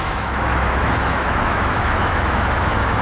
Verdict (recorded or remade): remade